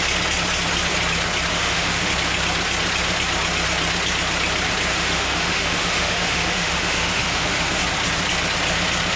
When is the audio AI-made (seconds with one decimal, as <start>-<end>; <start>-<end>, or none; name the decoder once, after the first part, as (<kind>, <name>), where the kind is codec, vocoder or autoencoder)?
1.5-2.1 (autoencoder, DAC-VAE); 4.9-7.8